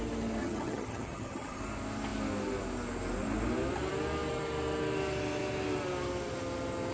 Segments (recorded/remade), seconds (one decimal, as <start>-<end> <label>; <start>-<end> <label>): 0.0-0.4 recorded; 0.4-1.6 remade; 1.6-6.9 recorded